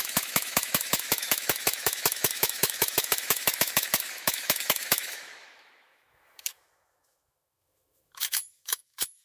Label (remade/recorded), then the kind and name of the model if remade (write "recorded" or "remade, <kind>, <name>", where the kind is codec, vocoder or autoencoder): remade, autoencoder, DAC-VAE